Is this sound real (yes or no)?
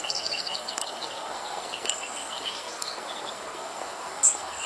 no